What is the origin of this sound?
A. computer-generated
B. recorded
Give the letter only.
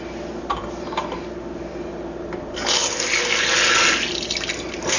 B